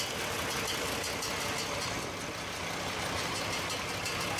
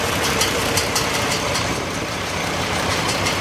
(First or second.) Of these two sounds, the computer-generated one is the second